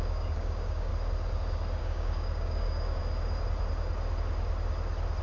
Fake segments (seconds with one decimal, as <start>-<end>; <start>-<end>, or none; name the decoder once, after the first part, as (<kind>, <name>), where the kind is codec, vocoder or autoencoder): 0.0-0.9 (codec, DAC); 1.8-3.0